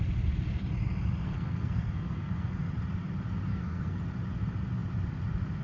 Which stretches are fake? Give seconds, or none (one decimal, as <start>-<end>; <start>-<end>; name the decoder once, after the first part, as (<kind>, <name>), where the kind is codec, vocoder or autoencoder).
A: 1.2-2.6 (codec, SNAC); 3.5-4.0